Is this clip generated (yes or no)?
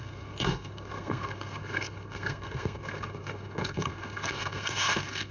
yes